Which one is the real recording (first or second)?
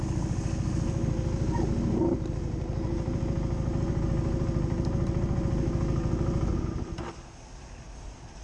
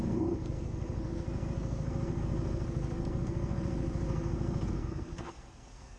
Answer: first